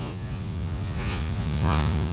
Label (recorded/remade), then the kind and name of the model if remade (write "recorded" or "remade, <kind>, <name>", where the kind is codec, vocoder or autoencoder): remade, vocoder, Vocos